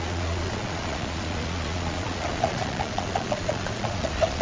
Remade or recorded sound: remade